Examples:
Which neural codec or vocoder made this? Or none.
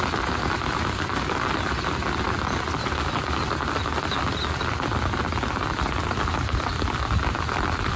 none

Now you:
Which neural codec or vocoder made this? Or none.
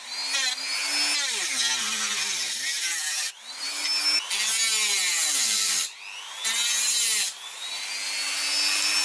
none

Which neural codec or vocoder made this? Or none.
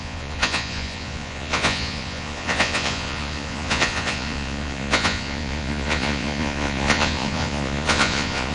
vocoder, Vocos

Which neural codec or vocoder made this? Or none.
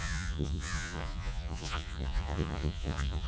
vocoder, Vocos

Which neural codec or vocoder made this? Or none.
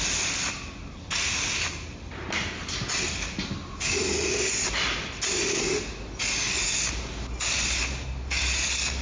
none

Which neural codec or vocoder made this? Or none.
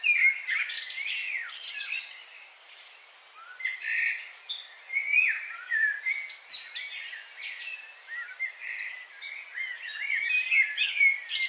none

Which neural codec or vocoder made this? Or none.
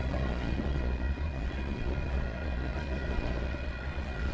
vocoder, Vocos